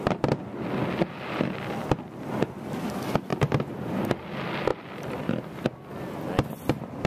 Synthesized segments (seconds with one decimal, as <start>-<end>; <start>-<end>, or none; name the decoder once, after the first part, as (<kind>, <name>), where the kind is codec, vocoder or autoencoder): none